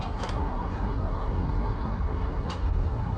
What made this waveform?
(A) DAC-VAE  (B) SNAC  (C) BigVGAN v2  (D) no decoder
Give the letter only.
B